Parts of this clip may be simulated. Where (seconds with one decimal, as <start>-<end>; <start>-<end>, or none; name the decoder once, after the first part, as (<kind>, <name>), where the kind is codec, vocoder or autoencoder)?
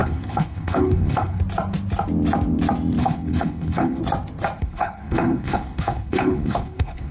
0.0-1.4 (codec, HILCodec); 3.0-4.0; 4.6-7.1